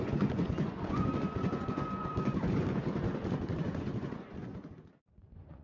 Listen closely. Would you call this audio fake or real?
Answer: fake